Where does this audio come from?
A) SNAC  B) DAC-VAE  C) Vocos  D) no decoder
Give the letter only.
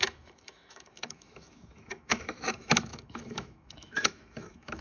B